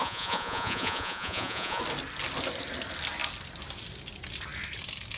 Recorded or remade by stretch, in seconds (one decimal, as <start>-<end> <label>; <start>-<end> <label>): 0.0-1.8 remade; 1.8-5.2 recorded